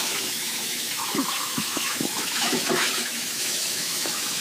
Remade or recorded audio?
remade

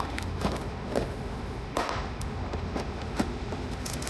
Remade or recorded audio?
remade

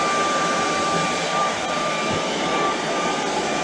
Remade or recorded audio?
remade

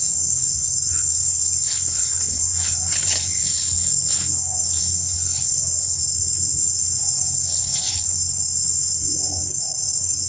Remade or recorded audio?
remade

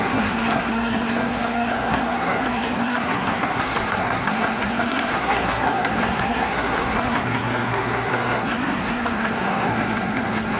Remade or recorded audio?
remade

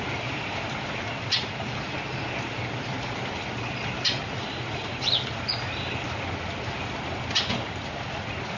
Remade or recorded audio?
remade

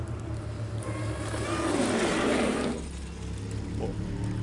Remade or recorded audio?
recorded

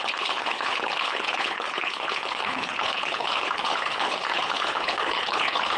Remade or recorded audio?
remade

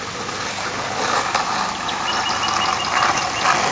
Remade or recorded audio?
recorded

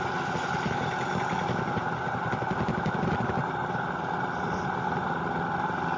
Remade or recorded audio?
recorded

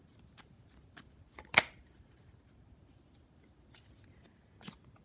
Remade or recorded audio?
recorded